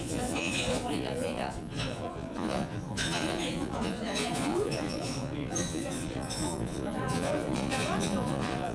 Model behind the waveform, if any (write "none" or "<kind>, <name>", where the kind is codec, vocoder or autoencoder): vocoder, Vocos